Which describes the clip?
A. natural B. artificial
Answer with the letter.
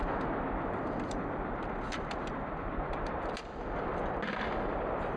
A